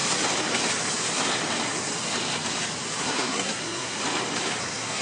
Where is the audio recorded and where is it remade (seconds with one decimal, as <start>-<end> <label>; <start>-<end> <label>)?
0.0-3.0 recorded; 3.0-4.0 remade; 4.0-4.6 recorded; 4.6-5.0 remade